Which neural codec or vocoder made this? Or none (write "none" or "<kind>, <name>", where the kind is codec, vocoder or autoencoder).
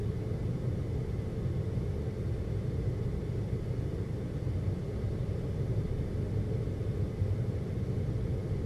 none